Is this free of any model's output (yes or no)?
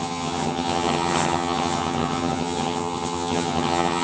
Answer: no